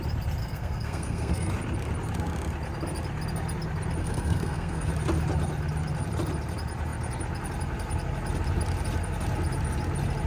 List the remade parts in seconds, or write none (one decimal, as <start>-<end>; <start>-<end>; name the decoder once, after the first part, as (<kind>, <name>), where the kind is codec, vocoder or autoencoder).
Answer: 0.4-1.5 (codec, SNAC); 4.0-4.9